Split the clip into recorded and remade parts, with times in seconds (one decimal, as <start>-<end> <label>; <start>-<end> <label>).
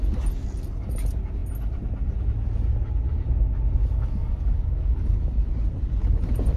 0.0-3.8 recorded; 3.8-5.1 remade; 5.1-6.6 recorded